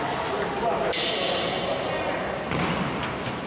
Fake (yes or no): no